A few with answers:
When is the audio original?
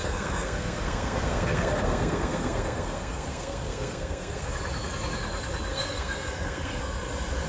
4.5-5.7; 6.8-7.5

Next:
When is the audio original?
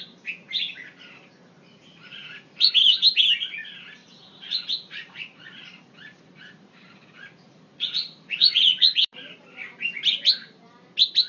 0.0-1.7; 2.7-4.0; 9.2-11.3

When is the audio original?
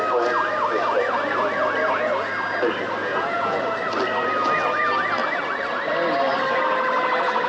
0.0-3.0; 3.6-7.5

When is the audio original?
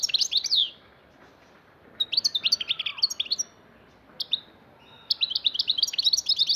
0.6-1.2; 2.9-4.2